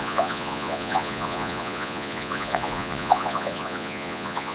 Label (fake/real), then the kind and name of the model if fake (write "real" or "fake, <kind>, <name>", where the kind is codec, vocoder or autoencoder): fake, vocoder, Vocos